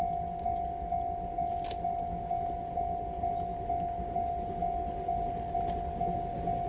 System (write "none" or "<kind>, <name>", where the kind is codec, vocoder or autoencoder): none